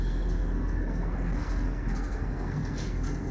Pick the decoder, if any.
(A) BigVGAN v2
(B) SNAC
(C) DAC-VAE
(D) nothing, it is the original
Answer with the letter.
B